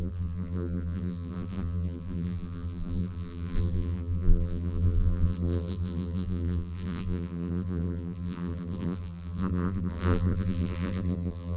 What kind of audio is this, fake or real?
fake